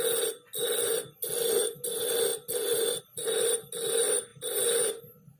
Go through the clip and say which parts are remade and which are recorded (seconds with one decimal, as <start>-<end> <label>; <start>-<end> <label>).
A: 0.0-5.4 recorded